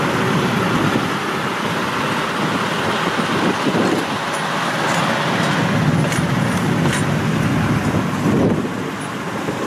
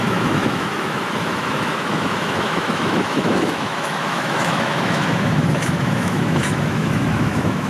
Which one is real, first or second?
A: first